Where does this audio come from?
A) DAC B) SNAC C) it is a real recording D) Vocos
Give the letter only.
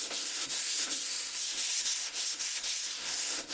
B